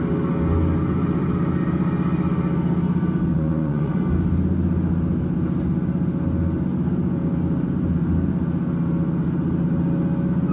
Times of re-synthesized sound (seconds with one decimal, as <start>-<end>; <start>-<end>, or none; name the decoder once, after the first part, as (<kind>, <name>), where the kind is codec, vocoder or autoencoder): 3.3-4.0 (vocoder, Vocos)